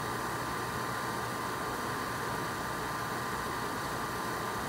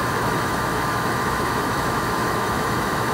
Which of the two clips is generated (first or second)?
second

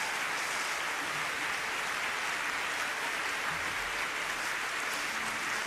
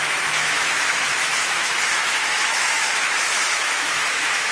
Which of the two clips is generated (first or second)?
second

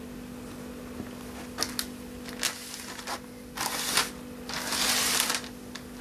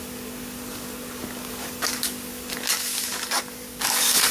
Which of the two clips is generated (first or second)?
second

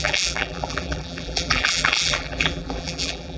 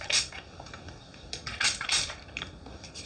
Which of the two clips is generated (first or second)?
first